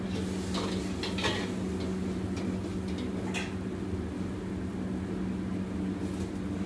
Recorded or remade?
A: recorded